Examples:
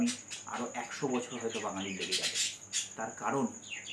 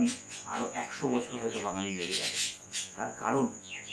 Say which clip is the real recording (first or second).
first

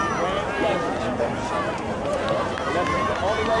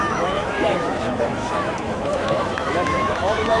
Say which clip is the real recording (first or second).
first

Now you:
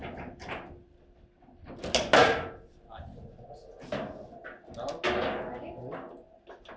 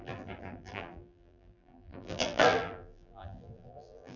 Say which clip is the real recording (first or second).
first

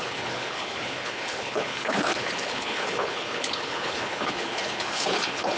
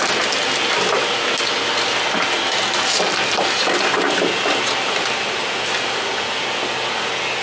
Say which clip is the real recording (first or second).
second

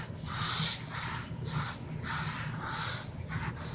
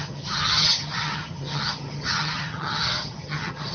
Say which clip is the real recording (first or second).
first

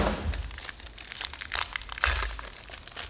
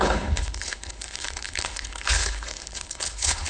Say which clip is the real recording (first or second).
first